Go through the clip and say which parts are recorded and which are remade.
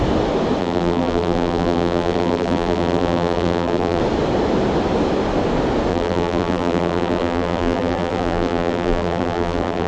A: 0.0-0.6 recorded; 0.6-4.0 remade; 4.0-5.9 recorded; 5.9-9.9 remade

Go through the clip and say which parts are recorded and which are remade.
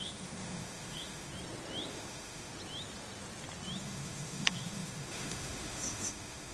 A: 0.0-1.3 remade; 1.3-1.9 recorded; 1.9-2.5 remade; 2.5-3.8 recorded; 3.8-6.5 remade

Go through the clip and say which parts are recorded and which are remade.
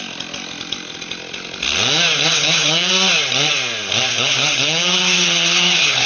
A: 0.0-2.3 recorded; 2.3-2.9 remade; 2.9-4.1 recorded; 4.1-6.1 remade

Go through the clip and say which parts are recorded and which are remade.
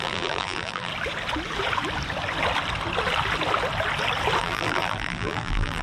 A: 0.0-0.9 remade; 0.9-4.4 recorded; 4.4-5.8 remade